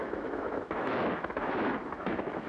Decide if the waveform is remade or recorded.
remade